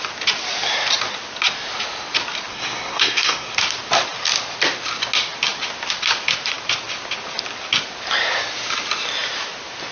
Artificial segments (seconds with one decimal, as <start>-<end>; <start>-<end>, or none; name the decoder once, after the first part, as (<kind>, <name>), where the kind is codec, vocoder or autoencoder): 2.5-3.5 (codec, SNAC)